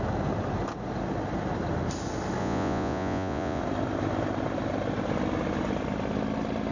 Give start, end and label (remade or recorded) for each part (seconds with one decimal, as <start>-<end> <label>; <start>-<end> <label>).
0.0-2.4 recorded; 2.4-3.6 remade; 3.6-6.7 recorded